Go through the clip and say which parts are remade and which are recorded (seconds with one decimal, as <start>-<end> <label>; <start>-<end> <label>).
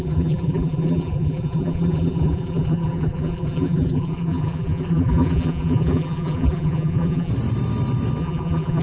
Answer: 0.0-7.3 remade; 7.3-8.2 recorded; 8.2-8.8 remade